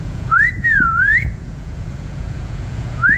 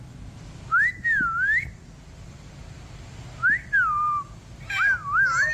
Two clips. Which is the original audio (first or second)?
second